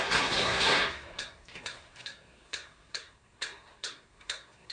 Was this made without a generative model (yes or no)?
no